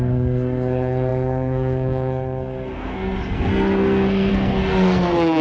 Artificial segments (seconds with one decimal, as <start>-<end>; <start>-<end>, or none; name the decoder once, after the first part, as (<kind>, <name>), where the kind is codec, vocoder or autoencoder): 0.0-5.4 (codec, SNAC)